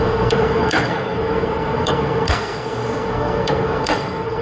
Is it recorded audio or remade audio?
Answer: remade